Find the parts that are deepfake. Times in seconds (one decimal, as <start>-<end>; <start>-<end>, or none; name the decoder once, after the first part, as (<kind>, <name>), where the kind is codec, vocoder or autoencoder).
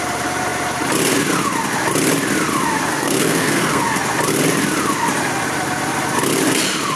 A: 2.9-3.8 (codec, SNAC)